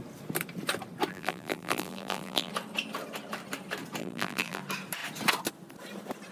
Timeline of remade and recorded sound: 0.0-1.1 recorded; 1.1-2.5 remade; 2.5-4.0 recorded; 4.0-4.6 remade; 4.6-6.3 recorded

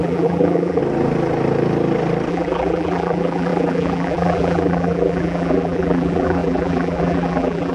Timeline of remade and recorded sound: 0.0-0.8 remade; 0.8-2.3 recorded; 2.3-7.7 remade

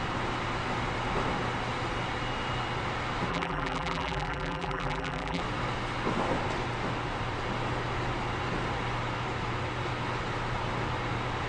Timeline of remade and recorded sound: 0.0-3.3 recorded; 3.3-5.4 remade; 5.4-11.5 recorded

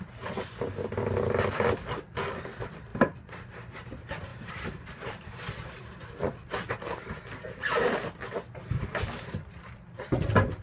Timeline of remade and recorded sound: 0.0-2.9 recorded; 2.9-3.5 remade; 3.5-4.3 recorded; 4.3-6.7 remade; 6.7-10.6 recorded

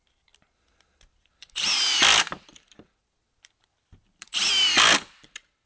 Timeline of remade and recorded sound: 0.0-1.1 recorded; 1.1-4.5 remade; 4.5-5.7 recorded